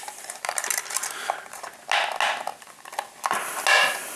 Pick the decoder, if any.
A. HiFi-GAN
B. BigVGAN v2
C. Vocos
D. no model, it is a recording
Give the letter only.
D